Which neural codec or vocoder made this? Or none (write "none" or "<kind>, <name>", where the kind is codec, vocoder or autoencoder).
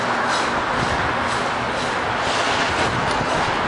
none